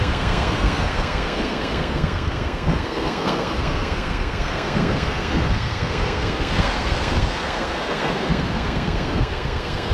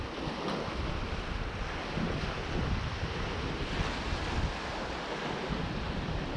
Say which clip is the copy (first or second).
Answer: first